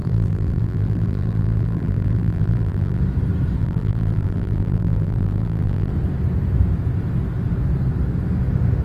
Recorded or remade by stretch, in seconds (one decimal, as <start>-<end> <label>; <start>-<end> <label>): 0.0-3.0 remade; 3.0-3.6 recorded; 3.6-5.9 remade; 5.9-8.8 recorded